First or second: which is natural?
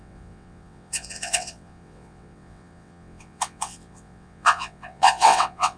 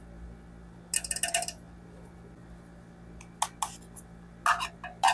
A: second